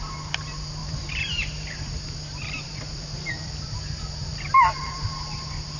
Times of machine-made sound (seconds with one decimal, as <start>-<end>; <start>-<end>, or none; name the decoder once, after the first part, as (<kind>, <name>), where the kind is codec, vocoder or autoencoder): 0.8-3.3 (vocoder, BigVGAN v2); 4.3-5.1

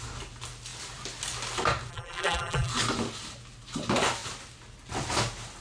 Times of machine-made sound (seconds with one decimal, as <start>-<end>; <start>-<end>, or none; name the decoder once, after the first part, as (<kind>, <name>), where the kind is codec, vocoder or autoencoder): 1.9-2.7 (vocoder, BigVGAN v2)

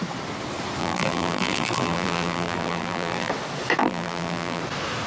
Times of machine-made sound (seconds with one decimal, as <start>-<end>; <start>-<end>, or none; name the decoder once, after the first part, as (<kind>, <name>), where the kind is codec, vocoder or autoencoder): 0.8-3.3 (vocoder, BigVGAN v2); 3.8-4.6

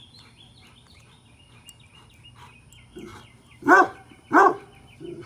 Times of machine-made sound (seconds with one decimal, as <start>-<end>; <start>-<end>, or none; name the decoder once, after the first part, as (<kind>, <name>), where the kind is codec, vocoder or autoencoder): none

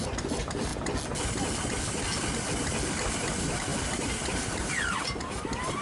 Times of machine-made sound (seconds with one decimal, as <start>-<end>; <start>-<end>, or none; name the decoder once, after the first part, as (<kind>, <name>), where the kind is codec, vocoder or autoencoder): 0.0-0.7 (vocoder, BigVGAN v2); 3.1-5.8

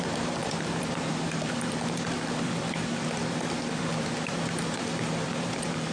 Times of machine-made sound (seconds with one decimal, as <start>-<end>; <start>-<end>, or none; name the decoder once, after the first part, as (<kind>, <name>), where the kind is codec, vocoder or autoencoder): 0.0-5.9 (vocoder, BigVGAN v2)